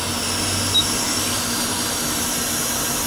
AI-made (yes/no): no